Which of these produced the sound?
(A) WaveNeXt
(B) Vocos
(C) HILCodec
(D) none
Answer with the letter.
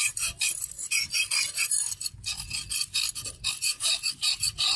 D